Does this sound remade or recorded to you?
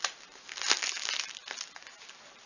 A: recorded